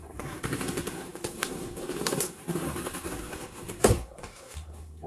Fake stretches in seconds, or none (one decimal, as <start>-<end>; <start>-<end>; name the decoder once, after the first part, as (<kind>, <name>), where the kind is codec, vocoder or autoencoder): 0.0-5.1 (codec, SNAC)